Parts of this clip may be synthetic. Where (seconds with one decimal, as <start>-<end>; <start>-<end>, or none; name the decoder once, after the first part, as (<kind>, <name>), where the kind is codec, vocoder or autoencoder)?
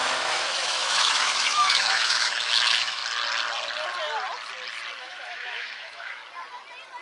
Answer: 0.0-3.0 (autoencoder, DAC-VAE); 5.0-6.2